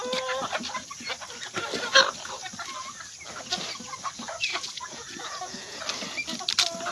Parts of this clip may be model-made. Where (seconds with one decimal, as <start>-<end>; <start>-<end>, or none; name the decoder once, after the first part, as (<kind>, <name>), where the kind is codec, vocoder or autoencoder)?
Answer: 4.5-5.8 (vocoder, Vocos)